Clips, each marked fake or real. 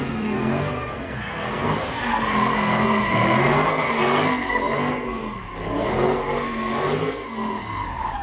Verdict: fake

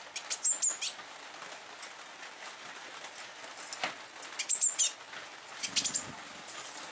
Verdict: real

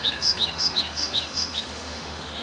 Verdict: fake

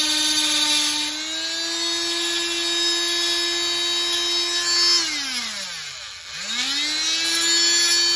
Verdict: real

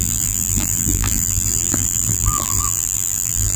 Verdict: fake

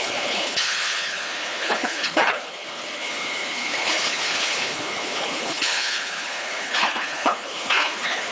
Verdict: fake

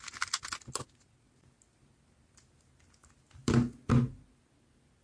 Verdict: real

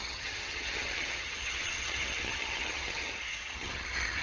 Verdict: fake